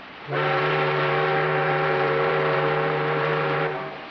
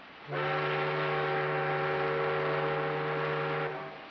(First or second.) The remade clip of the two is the first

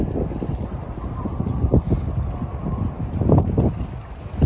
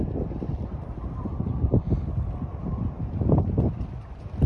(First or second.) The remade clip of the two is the second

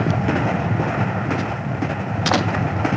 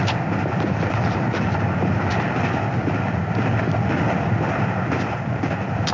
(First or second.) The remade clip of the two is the first